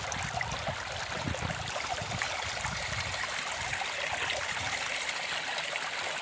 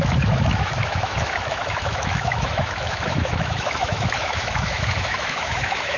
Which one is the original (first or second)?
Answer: first